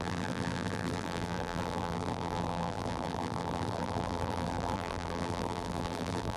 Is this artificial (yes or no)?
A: yes